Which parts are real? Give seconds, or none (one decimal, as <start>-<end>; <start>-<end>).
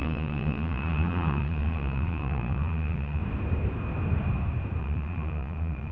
3.2-4.8